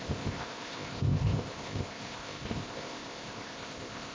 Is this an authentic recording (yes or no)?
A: no